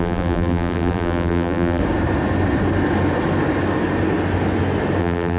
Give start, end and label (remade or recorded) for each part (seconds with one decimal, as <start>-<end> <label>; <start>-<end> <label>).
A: 0.0-1.8 remade; 1.8-5.0 recorded; 5.0-5.4 remade